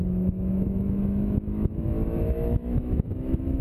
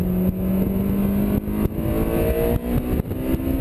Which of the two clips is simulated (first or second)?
first